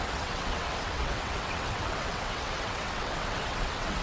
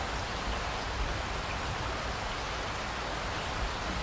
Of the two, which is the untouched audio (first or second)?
second